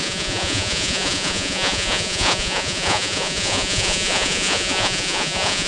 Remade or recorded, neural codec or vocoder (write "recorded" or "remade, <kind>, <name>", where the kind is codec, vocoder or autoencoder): remade, vocoder, Vocos